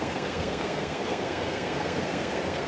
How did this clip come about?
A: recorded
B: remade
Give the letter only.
B